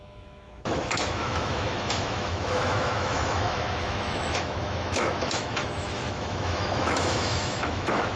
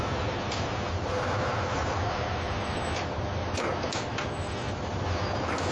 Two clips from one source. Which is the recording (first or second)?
second